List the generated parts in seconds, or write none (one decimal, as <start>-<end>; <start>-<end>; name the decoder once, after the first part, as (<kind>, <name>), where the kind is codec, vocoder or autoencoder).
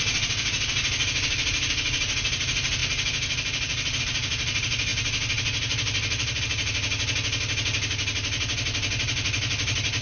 none